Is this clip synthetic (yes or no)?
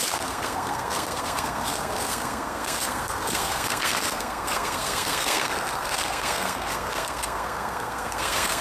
yes